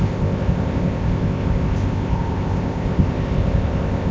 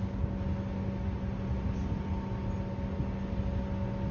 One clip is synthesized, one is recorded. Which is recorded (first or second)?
second